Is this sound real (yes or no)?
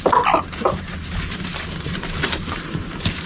no